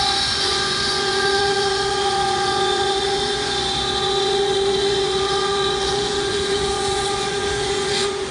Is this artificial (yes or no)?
yes